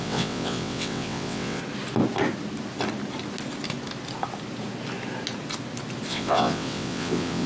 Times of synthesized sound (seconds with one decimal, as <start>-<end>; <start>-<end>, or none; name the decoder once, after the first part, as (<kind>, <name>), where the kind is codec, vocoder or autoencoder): 0.0-1.6 (vocoder, WaveNeXt); 6.1-7.5